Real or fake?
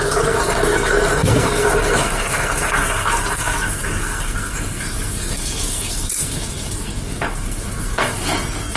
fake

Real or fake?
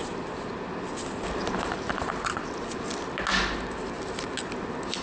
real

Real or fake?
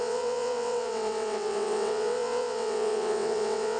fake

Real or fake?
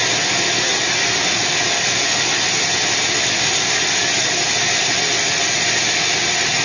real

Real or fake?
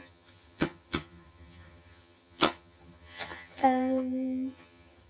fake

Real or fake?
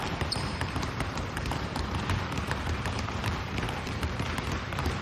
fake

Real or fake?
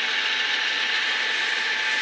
real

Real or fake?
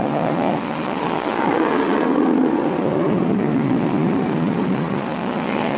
fake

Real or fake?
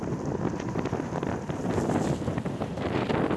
real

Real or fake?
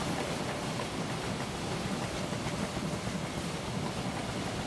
real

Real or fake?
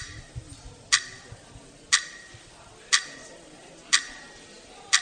real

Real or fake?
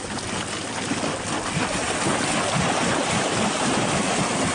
real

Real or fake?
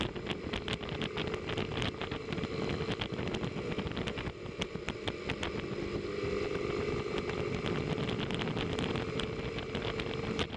real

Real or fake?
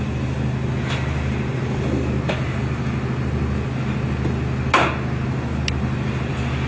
real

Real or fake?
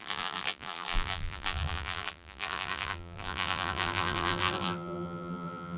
fake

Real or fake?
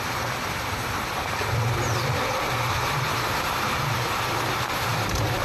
fake